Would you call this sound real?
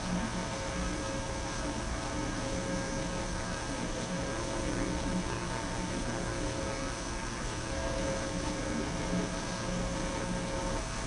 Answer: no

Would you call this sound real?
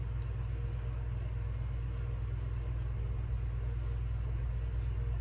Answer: yes